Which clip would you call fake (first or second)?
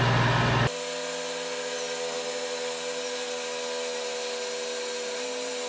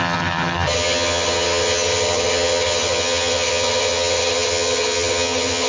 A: second